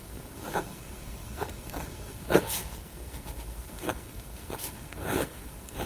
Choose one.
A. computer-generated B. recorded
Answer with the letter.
A